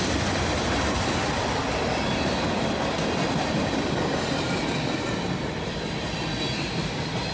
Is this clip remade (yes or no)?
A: no